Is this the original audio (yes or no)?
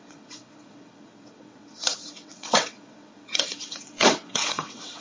no